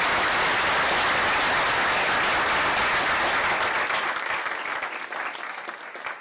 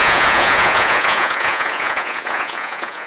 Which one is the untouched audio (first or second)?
first